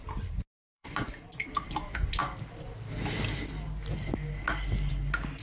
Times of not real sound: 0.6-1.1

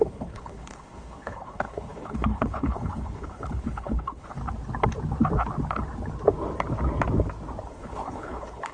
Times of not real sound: 0.0-4.4; 7.7-8.7

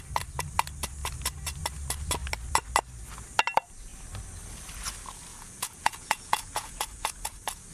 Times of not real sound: 5.3-7.1

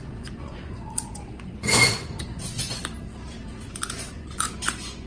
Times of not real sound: 0.0-2.8; 3.6-5.1

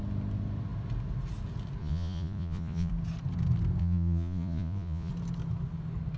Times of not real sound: 1.8-2.9; 3.8-5.1

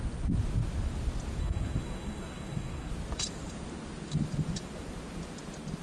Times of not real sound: 1.4-2.9